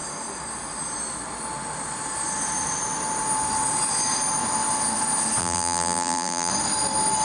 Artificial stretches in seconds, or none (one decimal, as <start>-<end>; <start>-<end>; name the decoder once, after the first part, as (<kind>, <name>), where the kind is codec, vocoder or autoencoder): 5.4-6.5 (vocoder, BigVGAN v2)